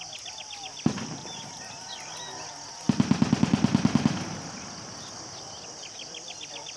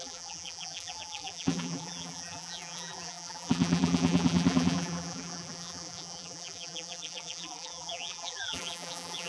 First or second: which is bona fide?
first